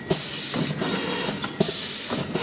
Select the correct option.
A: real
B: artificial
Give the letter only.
A